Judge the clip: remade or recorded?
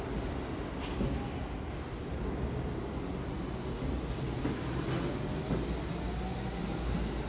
recorded